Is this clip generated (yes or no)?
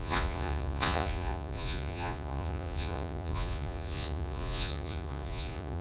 yes